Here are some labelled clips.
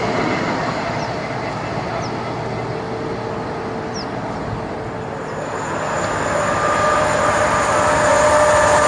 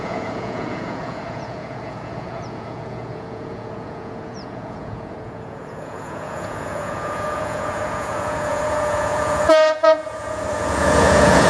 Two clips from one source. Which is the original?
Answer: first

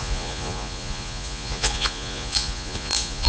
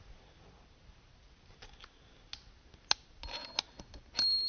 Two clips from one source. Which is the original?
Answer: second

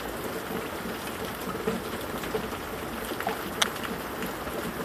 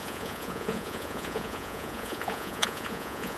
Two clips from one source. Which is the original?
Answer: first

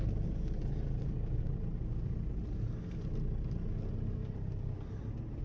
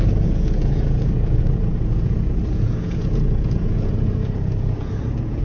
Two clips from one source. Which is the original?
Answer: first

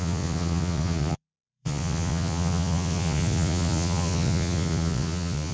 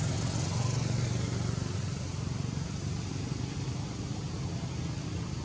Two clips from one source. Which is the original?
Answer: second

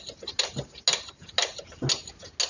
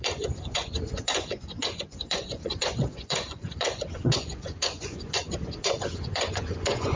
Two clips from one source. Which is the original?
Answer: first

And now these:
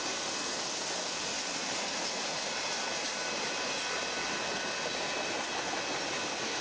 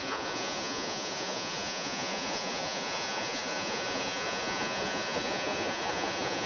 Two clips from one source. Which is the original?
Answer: first